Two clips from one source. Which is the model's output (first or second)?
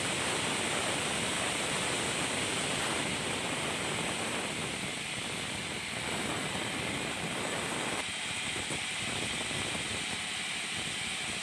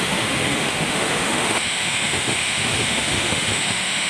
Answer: second